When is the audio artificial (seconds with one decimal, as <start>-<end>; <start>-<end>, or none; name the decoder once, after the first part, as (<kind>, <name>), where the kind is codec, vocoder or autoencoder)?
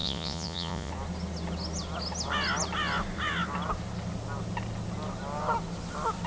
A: 0.0-0.9 (vocoder, Vocos)